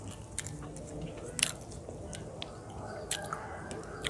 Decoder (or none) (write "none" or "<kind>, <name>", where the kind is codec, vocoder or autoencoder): none